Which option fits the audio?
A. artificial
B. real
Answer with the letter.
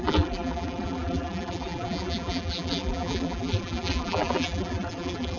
A